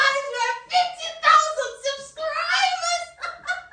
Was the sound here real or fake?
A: real